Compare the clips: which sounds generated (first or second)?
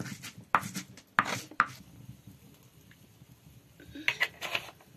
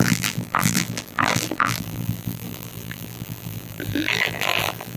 second